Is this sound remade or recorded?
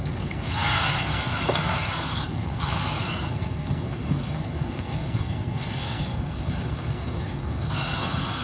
remade